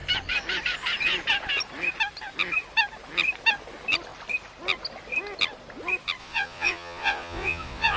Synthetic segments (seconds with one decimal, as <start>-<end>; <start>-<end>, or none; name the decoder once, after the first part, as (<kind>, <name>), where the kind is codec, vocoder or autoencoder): 6.2-8.0 (vocoder, Vocos)